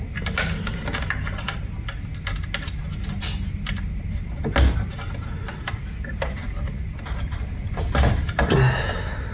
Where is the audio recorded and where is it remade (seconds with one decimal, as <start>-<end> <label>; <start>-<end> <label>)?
0.0-9.3 recorded